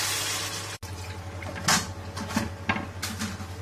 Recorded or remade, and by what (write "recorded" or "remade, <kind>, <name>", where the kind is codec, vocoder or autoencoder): recorded